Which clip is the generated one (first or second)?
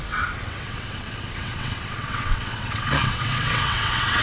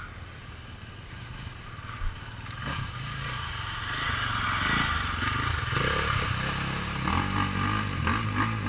first